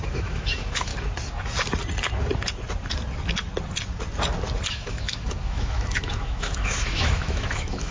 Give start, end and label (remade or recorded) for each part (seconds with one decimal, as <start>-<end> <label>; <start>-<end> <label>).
0.0-0.9 remade; 0.9-4.7 recorded; 4.7-7.9 remade